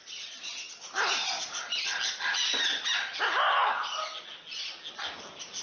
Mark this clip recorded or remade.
recorded